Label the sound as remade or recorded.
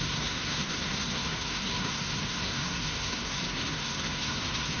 remade